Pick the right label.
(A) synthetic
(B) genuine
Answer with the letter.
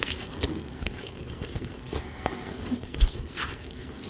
A